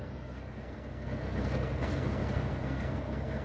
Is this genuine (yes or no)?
no